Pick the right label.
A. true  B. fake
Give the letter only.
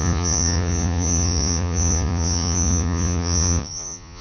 B